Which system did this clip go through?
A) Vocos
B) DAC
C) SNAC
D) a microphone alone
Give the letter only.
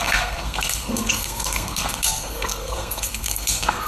C